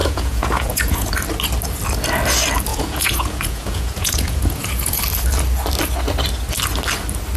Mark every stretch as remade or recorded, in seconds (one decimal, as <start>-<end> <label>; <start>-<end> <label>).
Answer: 0.0-1.1 remade; 1.1-2.7 recorded; 2.7-5.0 remade; 5.0-7.4 recorded